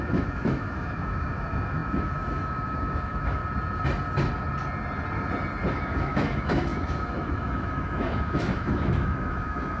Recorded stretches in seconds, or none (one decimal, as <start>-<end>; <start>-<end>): 3.4-5.7